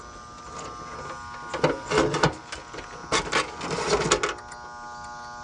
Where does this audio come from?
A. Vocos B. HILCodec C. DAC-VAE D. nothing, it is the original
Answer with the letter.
D